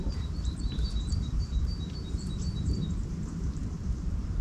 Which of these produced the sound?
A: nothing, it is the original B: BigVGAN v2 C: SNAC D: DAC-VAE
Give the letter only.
B